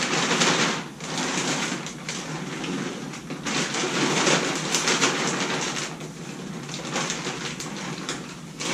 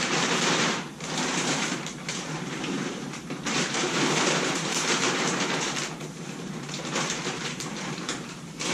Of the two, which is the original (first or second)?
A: first